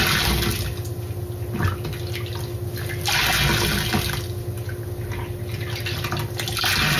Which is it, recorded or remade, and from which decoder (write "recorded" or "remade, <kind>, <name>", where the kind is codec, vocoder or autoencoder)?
recorded